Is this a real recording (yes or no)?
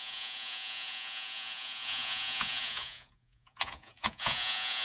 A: no